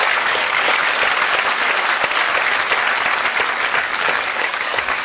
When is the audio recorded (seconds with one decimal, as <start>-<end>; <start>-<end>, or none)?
0.8-3.8